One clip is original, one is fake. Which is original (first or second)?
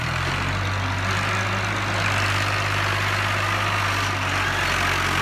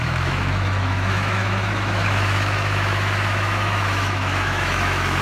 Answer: first